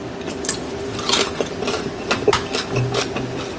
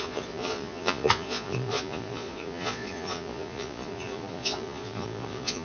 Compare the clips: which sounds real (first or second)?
first